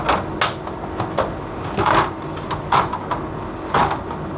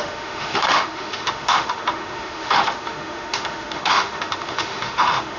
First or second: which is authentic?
first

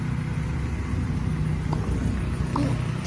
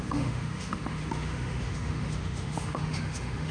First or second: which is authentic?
first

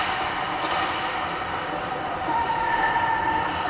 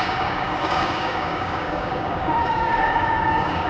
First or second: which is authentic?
first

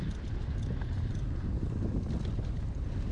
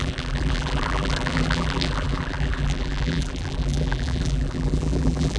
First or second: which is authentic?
first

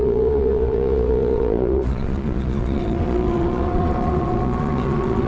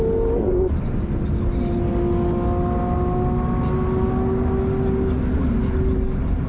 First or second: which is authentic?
second